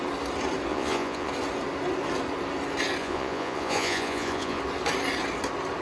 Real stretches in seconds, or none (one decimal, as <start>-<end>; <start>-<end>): 0.0-0.7; 1.3-3.0; 4.6-5.8